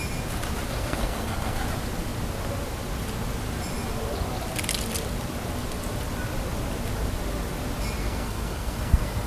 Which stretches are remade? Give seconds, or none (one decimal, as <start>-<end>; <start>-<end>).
0.7-1.6; 8.0-9.3